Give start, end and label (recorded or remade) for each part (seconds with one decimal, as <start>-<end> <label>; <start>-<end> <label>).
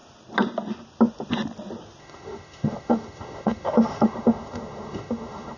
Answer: 0.0-2.0 recorded; 2.0-5.6 remade